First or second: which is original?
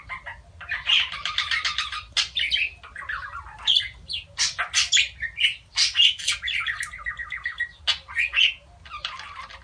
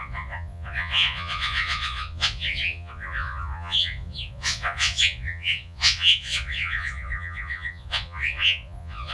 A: first